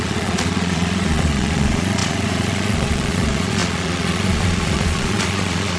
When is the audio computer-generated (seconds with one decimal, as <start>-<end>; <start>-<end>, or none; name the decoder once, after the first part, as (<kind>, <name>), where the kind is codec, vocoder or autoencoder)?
0.0-5.8 (vocoder, Vocos)